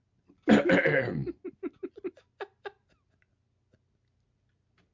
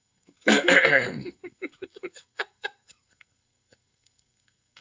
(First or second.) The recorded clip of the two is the first